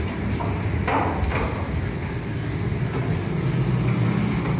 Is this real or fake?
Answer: real